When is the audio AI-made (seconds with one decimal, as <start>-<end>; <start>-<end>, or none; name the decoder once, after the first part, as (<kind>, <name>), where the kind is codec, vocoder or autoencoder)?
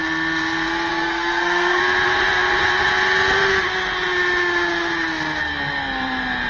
0.9-1.8 (codec, SNAC)